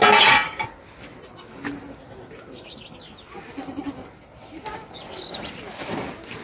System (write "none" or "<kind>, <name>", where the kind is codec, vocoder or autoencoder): none